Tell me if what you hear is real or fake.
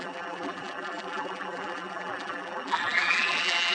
fake